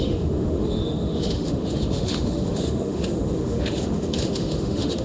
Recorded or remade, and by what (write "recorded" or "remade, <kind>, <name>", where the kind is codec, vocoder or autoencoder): remade, autoencoder, DAC-VAE